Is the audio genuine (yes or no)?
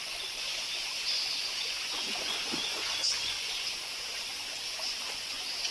no